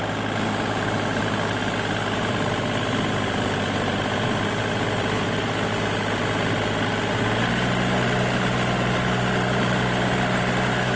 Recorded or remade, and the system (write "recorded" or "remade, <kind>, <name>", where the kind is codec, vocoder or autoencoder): recorded